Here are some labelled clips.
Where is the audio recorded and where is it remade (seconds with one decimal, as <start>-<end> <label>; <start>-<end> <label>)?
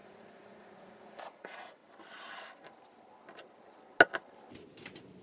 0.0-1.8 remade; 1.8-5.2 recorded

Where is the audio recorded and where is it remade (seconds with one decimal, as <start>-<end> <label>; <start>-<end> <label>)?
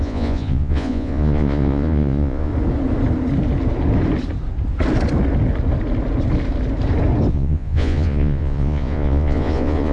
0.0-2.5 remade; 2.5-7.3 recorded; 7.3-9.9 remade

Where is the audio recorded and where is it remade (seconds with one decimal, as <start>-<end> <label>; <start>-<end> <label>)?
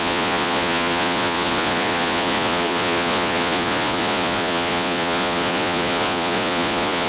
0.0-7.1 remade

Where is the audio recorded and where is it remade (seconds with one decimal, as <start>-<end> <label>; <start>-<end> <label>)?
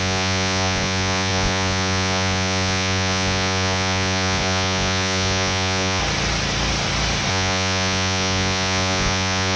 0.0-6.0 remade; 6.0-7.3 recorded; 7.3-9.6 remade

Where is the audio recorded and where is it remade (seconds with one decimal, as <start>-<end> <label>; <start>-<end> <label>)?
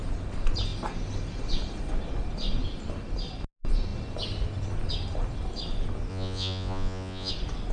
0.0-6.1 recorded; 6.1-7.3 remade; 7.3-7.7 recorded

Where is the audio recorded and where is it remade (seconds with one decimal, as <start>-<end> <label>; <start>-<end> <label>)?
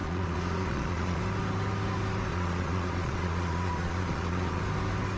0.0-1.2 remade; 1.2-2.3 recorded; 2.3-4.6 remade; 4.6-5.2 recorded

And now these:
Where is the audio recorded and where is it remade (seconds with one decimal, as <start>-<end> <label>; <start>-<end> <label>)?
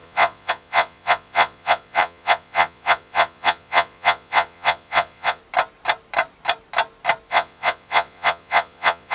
0.0-5.4 remade; 5.4-7.3 recorded; 7.3-9.1 remade